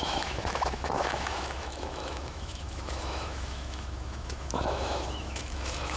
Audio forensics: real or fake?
fake